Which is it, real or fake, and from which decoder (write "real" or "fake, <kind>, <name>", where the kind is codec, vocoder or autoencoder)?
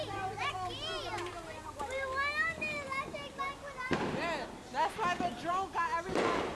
real